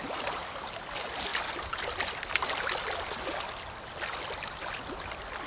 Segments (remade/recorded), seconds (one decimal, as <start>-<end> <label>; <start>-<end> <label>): 0.0-5.5 recorded